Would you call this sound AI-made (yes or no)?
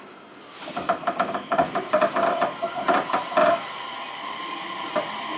yes